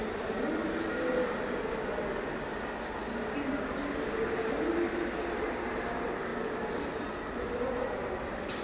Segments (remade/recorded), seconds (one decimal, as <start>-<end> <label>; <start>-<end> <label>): 0.0-8.6 recorded